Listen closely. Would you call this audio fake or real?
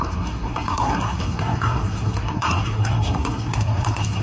fake